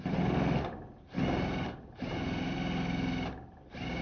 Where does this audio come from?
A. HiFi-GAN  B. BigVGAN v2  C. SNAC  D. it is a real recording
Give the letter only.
D